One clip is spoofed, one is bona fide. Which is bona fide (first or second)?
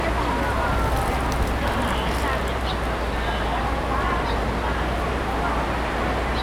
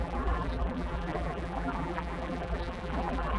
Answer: first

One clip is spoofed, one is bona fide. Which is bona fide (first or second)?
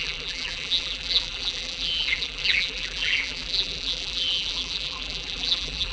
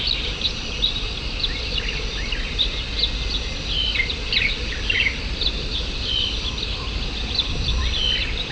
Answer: second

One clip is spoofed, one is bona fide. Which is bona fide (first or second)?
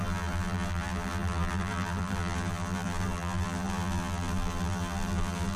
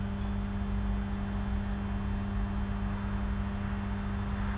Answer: second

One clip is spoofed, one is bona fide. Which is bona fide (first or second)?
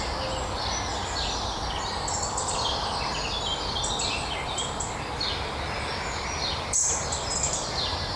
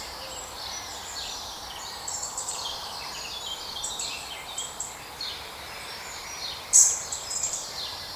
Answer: first